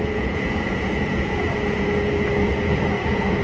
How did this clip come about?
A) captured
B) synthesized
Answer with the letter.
B